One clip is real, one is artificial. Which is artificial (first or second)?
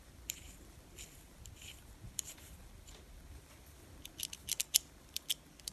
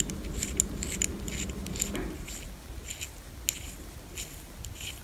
first